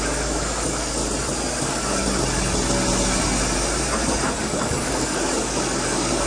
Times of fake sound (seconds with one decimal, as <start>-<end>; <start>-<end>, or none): 0.0-1.0; 1.6-2.0; 4.4-6.3